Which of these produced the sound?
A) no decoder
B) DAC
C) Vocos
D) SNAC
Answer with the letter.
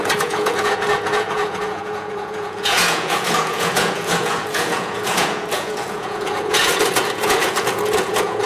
C